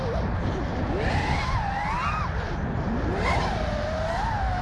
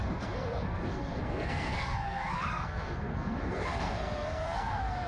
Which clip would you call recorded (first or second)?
first